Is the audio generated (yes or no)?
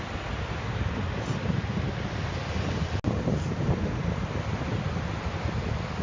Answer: no